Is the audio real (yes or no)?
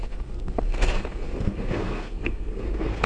no